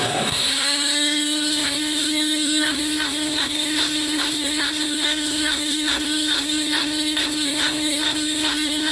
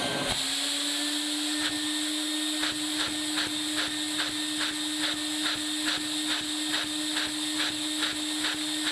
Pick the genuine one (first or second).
second